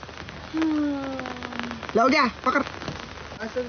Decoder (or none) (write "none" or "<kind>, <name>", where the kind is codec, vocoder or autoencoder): none